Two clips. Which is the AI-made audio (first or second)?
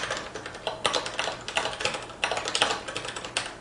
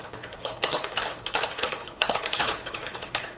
second